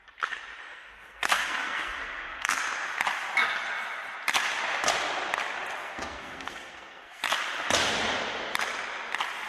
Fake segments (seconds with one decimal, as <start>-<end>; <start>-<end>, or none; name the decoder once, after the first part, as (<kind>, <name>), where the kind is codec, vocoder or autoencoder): 0.7-2.6 (codec, SNAC); 5.8-7.2